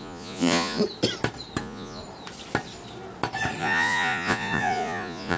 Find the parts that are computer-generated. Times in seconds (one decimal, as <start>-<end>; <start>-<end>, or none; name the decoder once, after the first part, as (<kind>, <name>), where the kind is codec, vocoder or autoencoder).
0.0-0.8 (vocoder, Vocos); 1.6-2.0; 3.6-5.4